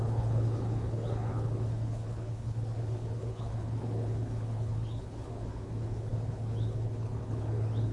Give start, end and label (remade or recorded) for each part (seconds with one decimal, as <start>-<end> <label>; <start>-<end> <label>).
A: 0.0-7.9 remade